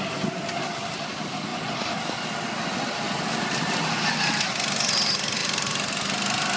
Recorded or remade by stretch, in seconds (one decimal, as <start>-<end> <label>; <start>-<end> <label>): 0.0-6.6 recorded